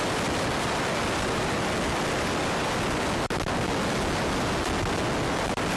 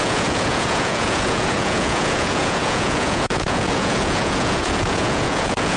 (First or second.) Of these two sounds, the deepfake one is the second